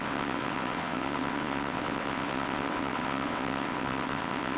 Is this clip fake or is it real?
fake